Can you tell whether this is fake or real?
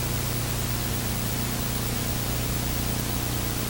real